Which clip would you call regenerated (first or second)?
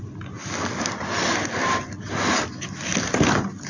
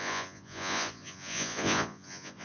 second